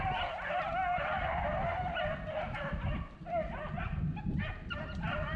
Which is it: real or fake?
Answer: real